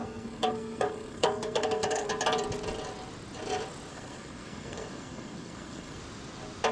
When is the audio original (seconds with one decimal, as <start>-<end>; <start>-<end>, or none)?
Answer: 2.1-3.9; 6.0-6.7

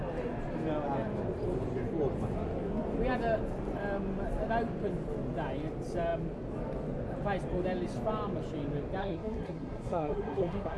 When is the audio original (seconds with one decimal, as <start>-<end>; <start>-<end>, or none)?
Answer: 0.0-9.0

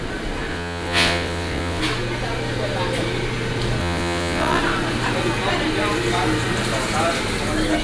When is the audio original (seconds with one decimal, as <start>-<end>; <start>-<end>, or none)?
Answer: 0.0-0.5; 1.8-3.8; 4.6-7.8

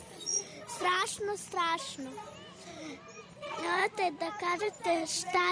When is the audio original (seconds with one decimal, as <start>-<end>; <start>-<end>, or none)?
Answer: 0.5-3.3; 3.8-4.6

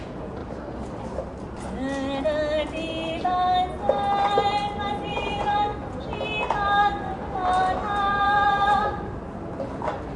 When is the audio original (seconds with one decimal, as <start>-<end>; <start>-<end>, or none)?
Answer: 0.4-5.1; 5.7-8.1; 8.8-10.2